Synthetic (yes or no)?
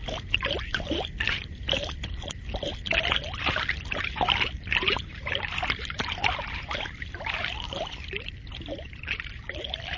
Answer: yes